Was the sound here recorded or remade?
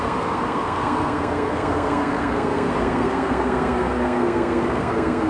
remade